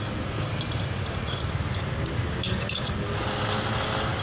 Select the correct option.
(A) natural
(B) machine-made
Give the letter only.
A